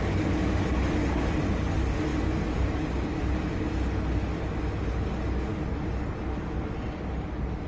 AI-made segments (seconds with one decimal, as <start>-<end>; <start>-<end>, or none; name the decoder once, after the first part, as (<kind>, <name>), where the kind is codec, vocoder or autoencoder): none